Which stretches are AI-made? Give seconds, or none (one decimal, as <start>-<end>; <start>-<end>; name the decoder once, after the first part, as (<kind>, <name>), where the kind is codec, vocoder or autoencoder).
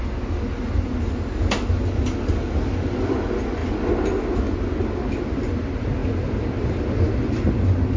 none